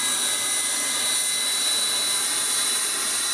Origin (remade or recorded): recorded